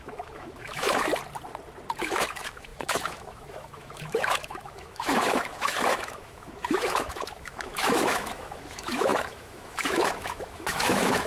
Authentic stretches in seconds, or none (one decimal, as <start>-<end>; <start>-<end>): 1.1-2.0